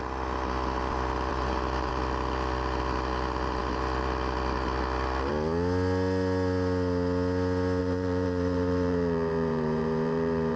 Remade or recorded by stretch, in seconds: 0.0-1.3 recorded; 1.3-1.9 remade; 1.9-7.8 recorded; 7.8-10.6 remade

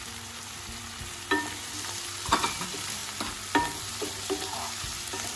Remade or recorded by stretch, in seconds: 0.0-3.0 remade; 3.0-3.8 recorded; 3.8-5.4 remade